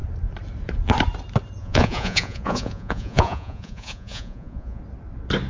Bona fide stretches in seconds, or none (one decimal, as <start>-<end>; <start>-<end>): 0.0-1.6; 4.8-5.5